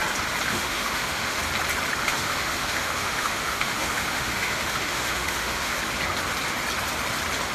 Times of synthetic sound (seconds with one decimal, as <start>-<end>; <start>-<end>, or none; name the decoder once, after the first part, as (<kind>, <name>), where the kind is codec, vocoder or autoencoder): 0.5-1.4 (autoencoder, DAC-VAE); 2.0-5.8